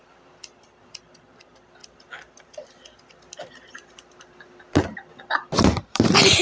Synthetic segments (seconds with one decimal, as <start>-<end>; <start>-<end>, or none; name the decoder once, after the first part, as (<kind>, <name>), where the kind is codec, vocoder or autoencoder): none